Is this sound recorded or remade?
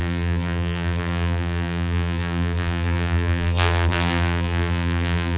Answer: remade